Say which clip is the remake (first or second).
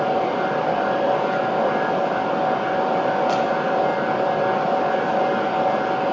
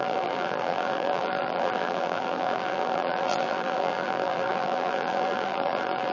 second